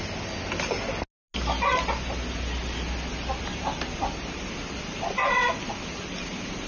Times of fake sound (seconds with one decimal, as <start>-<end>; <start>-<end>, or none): none